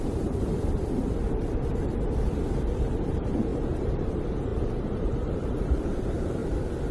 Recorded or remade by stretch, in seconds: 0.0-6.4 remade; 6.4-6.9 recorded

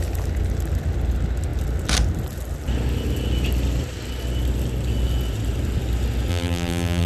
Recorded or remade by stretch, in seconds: 0.0-6.3 recorded; 6.3-7.1 remade

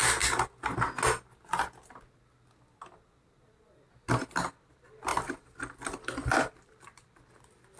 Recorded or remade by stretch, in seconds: 0.0-4.5 recorded; 4.5-7.8 remade

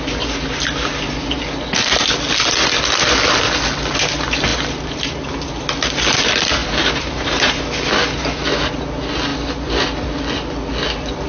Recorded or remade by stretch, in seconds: 0.0-4.5 recorded; 4.5-5.5 remade; 5.5-6.6 recorded; 6.6-7.6 remade; 7.6-11.3 recorded

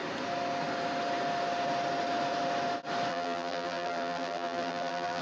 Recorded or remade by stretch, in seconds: 0.0-3.1 recorded; 3.1-5.2 remade